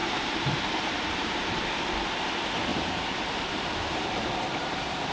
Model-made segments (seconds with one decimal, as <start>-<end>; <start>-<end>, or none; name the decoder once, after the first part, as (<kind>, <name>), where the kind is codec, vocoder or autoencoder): 0.0-1.5 (vocoder, BigVGAN v2); 2.7-4.1